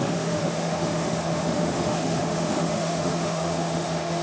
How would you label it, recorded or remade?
remade